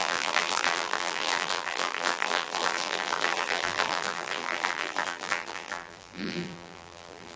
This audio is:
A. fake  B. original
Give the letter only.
A